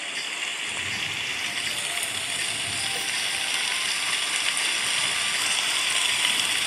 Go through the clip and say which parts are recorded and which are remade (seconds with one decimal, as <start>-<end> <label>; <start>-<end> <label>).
0.0-6.7 recorded